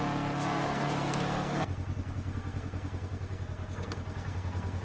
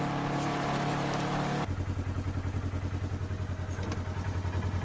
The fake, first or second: first